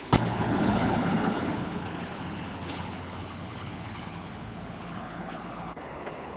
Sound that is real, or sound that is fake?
fake